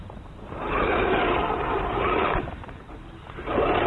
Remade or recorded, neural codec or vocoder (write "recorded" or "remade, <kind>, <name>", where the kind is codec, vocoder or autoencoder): recorded